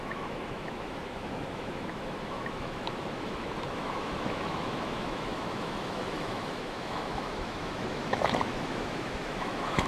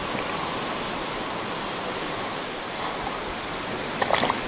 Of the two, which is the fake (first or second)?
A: first